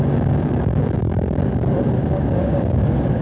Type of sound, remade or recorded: remade